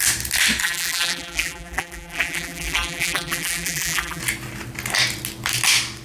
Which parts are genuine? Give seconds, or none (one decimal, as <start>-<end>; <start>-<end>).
0.0-0.6; 4.2-6.0